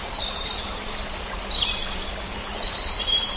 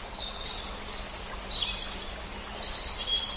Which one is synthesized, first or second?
first